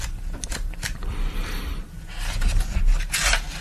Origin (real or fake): real